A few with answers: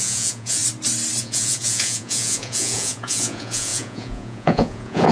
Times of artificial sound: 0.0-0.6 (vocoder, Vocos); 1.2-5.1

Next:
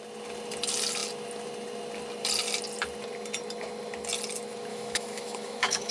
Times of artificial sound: 4.7-5.9 (autoencoder, DAC-VAE)